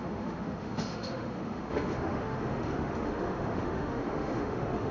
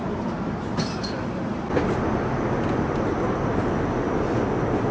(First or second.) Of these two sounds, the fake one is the first